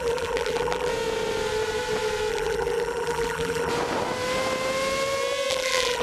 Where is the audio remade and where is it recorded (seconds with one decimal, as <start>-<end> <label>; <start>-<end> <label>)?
0.0-0.9 remade; 0.9-2.3 recorded; 2.3-3.7 remade; 3.7-5.5 recorded; 5.5-6.0 remade